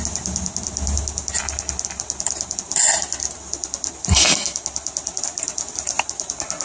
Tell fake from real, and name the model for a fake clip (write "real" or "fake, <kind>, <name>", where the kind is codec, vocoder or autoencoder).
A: real